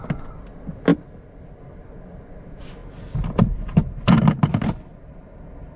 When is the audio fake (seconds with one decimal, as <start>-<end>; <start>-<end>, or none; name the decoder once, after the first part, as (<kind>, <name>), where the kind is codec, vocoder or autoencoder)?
none